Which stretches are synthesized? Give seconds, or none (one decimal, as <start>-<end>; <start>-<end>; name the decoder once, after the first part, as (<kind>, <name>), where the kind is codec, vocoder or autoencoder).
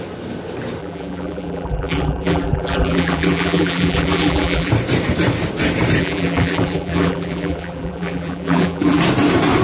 0.8-4.7 (vocoder, BigVGAN v2); 6.0-9.0